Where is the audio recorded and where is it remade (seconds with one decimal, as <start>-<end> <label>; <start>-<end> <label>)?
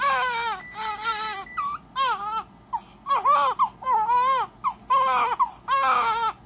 0.0-6.5 recorded